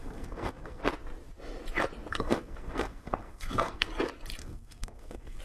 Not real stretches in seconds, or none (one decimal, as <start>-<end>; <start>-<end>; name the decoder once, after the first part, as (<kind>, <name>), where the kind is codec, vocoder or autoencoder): 0.0-0.8 (codec, SNAC); 2.1-3.9; 4.4-5.4